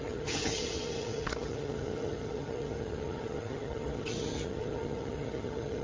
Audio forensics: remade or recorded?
remade